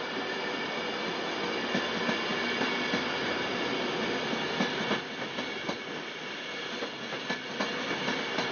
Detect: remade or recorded recorded